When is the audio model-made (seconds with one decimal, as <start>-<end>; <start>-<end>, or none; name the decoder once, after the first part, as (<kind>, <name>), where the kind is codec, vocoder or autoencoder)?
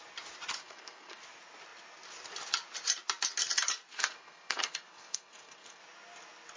0.6-1.2 (codec, SNAC); 3.9-5.8